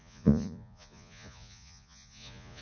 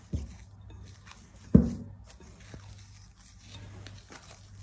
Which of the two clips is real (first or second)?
second